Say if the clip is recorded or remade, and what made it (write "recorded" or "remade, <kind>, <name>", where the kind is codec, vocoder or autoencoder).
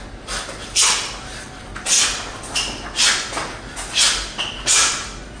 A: recorded